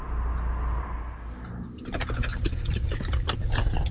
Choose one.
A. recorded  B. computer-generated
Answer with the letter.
A